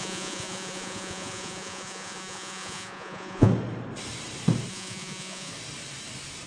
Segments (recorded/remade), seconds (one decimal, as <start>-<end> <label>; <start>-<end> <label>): 0.0-3.5 remade; 3.5-4.7 recorded; 4.7-5.5 remade; 5.5-6.5 recorded

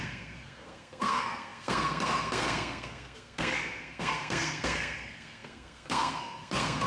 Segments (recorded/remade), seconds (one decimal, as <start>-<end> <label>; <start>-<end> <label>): 0.0-6.9 remade

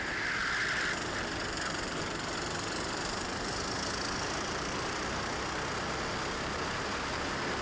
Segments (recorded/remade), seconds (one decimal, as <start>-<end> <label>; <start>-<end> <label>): 0.0-7.6 recorded

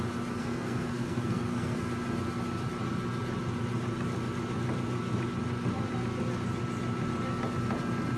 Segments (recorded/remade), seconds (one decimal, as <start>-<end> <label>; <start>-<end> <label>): 0.0-0.4 recorded; 0.4-1.9 remade; 1.9-8.2 recorded

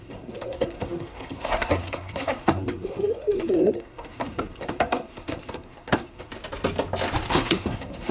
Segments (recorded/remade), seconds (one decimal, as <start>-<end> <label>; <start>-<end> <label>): 0.0-6.3 remade; 6.3-7.3 recorded; 7.3-8.1 remade